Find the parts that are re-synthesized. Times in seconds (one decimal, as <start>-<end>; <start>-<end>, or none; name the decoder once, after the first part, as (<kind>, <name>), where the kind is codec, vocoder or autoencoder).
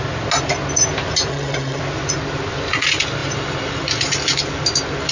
1.3-1.8 (vocoder, HiFi-GAN)